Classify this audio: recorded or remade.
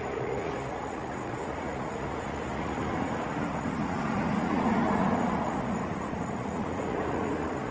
remade